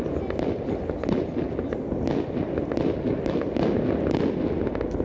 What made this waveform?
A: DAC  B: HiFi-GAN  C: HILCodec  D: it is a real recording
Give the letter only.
D